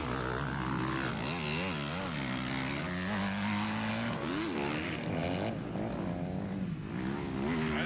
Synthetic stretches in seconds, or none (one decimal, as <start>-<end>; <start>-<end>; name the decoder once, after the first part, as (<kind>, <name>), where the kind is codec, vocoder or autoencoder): none